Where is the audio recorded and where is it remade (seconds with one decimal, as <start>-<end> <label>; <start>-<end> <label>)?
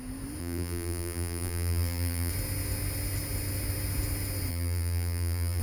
0.0-0.4 recorded; 0.4-2.3 remade; 2.3-4.5 recorded; 4.5-5.6 remade